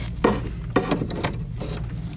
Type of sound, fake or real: real